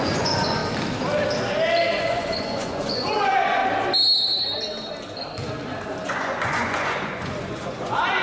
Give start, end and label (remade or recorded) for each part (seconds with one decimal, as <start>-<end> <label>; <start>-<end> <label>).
0.0-0.6 remade; 0.6-2.0 recorded; 2.0-3.6 remade; 3.6-6.0 recorded; 6.0-8.2 remade